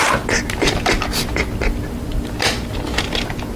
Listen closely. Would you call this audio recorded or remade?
recorded